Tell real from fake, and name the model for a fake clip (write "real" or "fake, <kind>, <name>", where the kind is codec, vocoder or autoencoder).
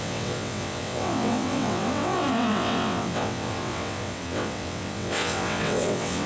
fake, vocoder, WaveNeXt